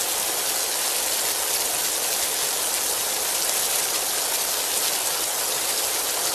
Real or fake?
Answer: real